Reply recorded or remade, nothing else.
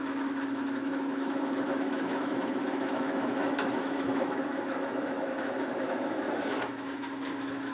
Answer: remade